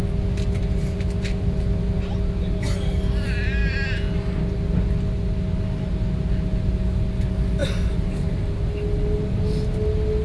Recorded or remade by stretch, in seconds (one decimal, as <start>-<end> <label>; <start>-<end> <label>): 0.0-7.6 recorded; 7.6-8.4 remade; 8.4-10.2 recorded